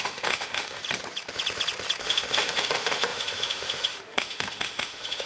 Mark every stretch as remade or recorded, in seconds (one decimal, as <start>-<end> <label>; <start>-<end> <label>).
0.0-0.8 remade; 0.8-2.0 recorded; 2.0-5.3 remade